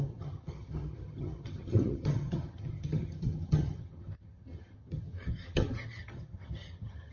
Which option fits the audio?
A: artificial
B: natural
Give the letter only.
A